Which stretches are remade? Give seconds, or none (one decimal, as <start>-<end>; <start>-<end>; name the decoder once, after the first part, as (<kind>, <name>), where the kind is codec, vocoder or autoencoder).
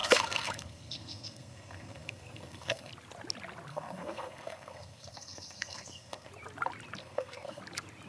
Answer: 0.0-2.9 (codec, SNAC); 3.7-6.3; 7.0-7.6